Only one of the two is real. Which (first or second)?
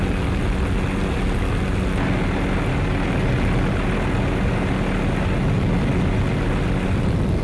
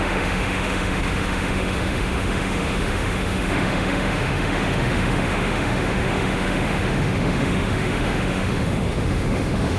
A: first